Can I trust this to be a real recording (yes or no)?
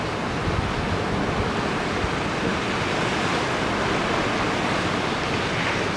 yes